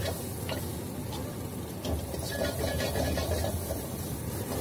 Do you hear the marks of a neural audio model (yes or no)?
no